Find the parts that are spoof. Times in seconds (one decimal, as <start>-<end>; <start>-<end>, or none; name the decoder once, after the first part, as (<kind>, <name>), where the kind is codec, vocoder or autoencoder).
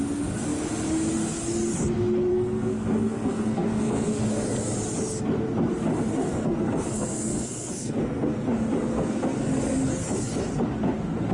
2.3-4.2 (codec, SNAC); 6.1-8.5; 8.9-9.4